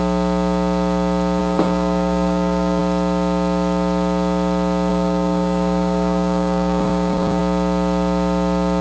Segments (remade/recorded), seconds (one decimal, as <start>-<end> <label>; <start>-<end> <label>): 0.0-1.4 recorded; 1.4-2.8 remade; 2.8-4.9 recorded; 4.9-7.4 remade; 7.4-8.8 recorded